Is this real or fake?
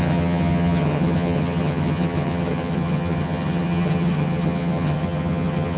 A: fake